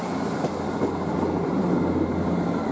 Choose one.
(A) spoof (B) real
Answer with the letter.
B